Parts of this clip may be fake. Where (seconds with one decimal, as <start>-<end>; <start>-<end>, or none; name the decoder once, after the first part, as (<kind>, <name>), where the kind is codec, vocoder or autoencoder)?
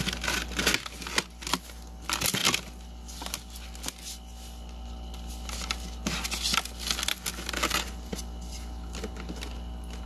none